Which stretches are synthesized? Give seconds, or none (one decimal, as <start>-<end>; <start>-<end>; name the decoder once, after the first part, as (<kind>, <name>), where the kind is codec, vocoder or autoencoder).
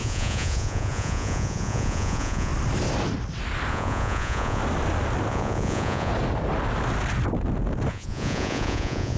0.0-2.5 (vocoder, Vocos); 3.7-4.6; 5.3-6.1; 7.9-9.2